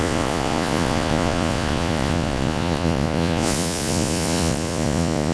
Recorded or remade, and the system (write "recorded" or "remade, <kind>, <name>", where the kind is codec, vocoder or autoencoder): remade, vocoder, Vocos